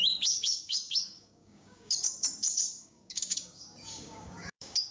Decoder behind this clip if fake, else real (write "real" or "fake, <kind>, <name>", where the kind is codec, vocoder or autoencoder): fake, codec, DAC